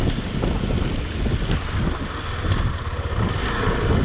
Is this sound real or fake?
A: real